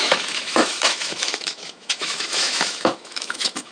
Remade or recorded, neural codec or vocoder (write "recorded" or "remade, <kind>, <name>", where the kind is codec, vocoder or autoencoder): remade, autoencoder, DAC-VAE